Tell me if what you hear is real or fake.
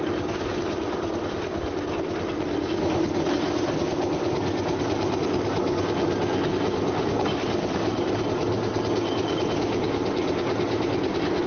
real